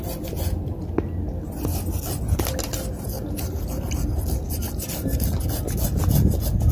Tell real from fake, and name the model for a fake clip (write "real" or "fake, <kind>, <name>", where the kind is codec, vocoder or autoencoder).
real